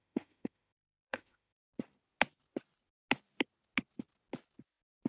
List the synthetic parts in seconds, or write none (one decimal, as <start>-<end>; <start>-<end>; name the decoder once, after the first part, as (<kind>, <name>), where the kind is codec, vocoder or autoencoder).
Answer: 0.0-1.6 (autoencoder, DAC-VAE)